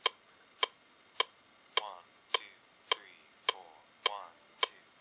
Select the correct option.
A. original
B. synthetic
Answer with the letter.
A